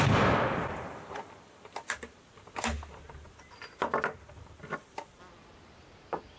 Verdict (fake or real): fake